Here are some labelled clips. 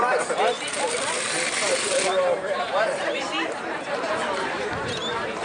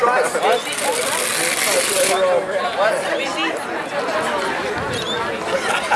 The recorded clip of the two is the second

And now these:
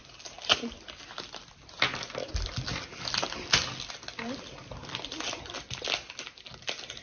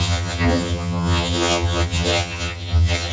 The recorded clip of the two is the first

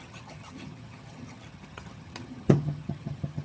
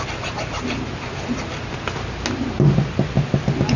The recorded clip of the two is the second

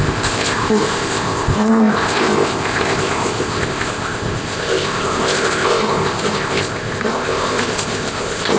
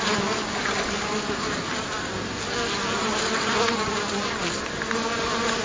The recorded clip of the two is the second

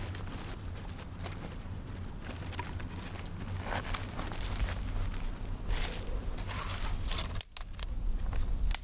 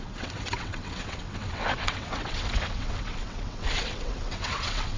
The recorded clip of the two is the first